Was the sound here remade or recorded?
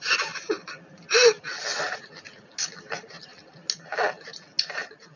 recorded